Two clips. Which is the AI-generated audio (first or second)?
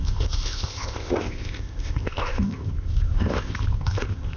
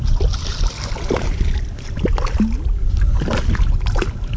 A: first